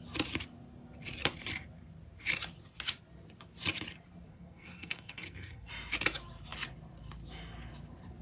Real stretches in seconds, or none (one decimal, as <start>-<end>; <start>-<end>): 0.0-4.3; 5.7-8.2